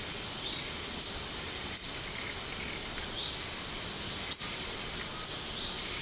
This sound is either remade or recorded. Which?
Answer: recorded